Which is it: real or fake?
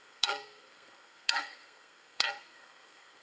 fake